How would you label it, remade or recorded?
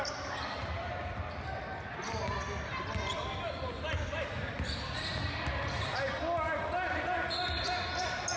recorded